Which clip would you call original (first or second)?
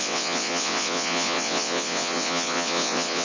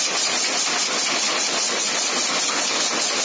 second